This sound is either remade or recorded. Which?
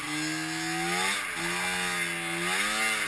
recorded